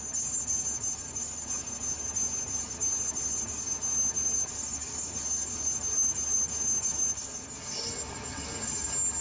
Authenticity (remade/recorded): recorded